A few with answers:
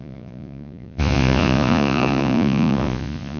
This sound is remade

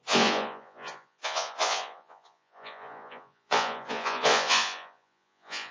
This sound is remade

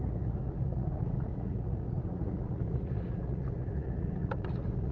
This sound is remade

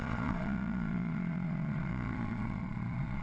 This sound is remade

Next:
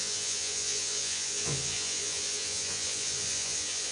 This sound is remade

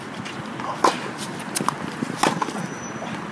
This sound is recorded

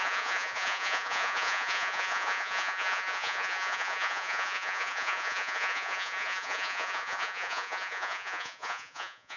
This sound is remade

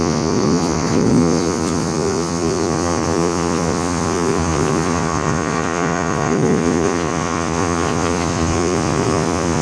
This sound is remade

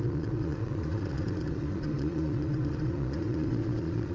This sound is remade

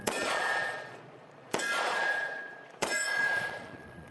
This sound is remade